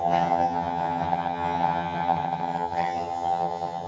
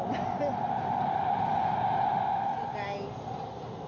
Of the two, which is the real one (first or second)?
second